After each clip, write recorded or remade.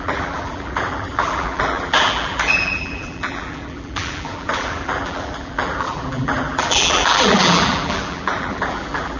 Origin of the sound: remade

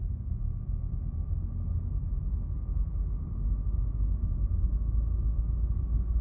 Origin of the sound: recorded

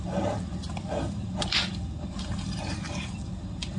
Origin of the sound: remade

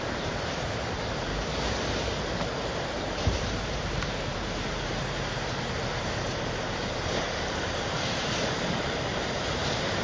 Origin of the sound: remade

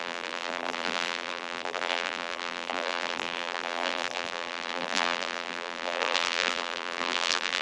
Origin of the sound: remade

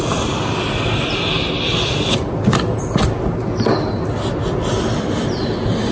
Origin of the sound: recorded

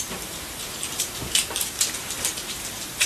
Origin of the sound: remade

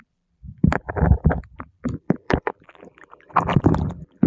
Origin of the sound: remade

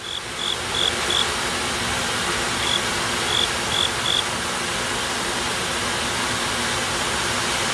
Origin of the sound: recorded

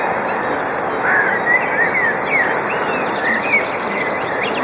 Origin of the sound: remade